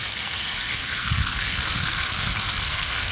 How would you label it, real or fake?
fake